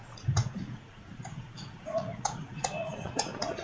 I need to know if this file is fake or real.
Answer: fake